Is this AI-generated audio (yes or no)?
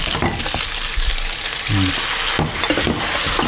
no